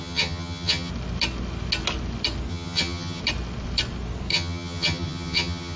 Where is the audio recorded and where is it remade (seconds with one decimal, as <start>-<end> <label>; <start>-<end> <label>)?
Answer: 0.0-0.9 remade; 0.9-2.5 recorded; 2.5-3.2 remade; 3.2-4.3 recorded; 4.3-5.8 remade